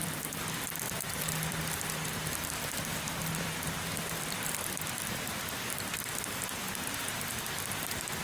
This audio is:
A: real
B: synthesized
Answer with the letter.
B